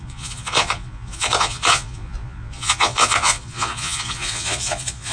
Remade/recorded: remade